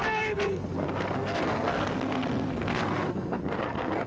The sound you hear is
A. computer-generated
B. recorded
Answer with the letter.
A